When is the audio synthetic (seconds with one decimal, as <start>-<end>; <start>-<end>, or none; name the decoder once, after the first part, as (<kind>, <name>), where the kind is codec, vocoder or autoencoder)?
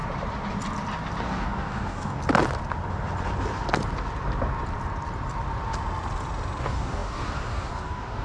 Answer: 1.2-2.2 (codec, DAC); 6.6-8.2